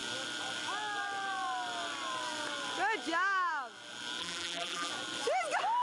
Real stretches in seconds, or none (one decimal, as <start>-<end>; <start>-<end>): 0.0-4.2; 4.9-5.8